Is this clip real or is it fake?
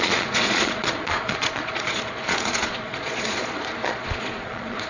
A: fake